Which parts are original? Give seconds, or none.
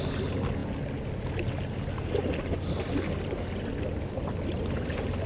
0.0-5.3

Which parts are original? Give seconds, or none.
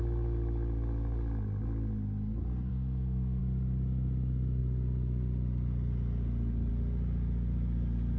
0.0-2.7; 3.4-8.2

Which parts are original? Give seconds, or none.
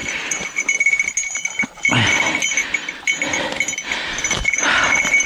0.7-5.3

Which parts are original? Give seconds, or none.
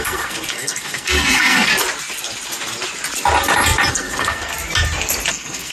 1.7-3.9; 4.5-5.3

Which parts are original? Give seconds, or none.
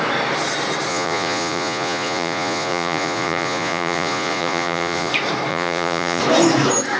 0.0-0.9; 5.1-5.5; 6.2-7.0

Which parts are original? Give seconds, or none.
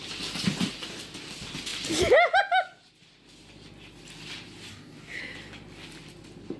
0.0-4.7; 5.2-6.6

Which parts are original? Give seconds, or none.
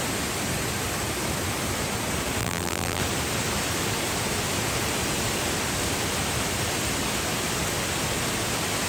0.0-2.4; 3.0-8.9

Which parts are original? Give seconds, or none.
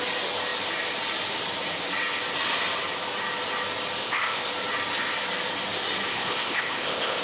0.0-4.0; 4.5-6.1